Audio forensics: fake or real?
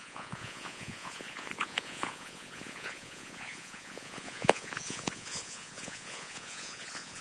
fake